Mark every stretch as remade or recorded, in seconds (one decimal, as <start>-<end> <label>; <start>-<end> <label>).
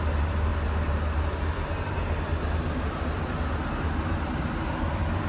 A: 0.0-5.3 recorded